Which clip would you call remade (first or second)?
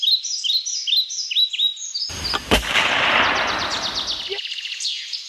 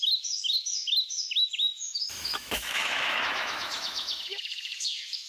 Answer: second